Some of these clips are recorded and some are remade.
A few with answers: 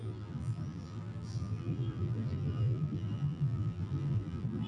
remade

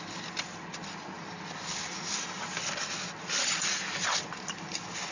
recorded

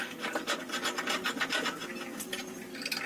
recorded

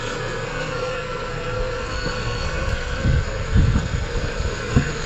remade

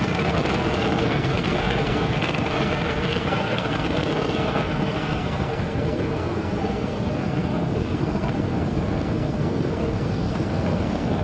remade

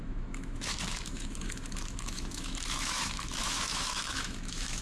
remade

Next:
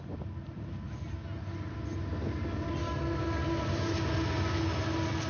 recorded